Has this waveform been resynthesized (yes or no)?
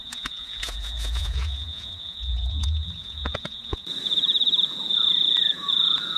yes